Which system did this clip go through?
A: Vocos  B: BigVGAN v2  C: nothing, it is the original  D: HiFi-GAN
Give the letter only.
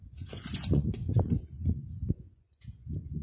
A